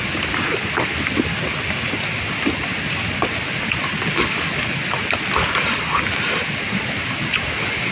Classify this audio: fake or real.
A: real